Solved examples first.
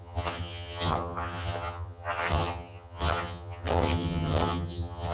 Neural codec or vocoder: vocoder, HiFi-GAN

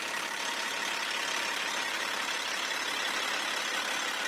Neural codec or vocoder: none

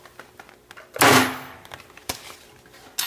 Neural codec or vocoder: none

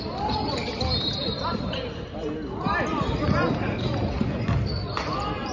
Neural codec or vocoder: none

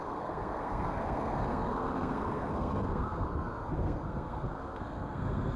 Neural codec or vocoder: codec, SNAC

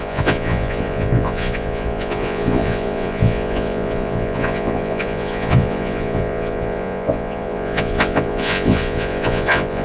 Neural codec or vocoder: vocoder, Vocos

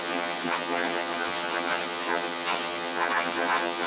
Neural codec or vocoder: vocoder, HiFi-GAN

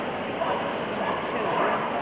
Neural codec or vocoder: none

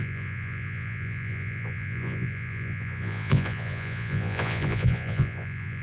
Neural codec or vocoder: vocoder, Vocos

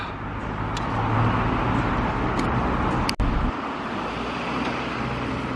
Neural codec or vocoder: none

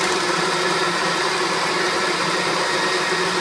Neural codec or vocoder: none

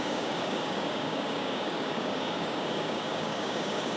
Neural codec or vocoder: codec, DAC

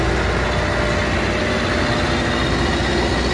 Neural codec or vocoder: none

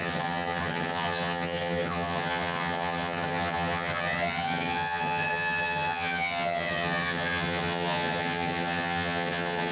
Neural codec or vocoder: vocoder, HiFi-GAN